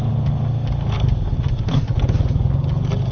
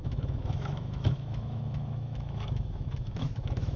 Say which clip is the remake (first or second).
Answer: second